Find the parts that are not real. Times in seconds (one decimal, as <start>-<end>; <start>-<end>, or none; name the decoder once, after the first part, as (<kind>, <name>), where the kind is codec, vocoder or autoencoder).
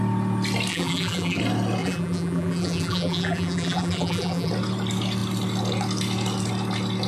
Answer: 0.7-1.4 (vocoder, BigVGAN v2); 1.8-4.5